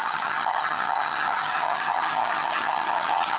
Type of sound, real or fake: fake